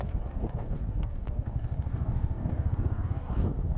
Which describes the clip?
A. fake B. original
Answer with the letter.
A